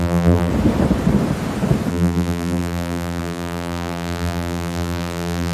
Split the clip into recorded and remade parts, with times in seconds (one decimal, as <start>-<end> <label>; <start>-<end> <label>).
0.0-0.5 remade; 0.5-1.9 recorded; 1.9-5.5 remade